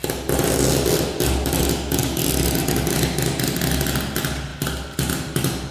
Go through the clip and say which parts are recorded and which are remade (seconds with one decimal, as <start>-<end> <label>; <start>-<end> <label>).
0.0-5.7 recorded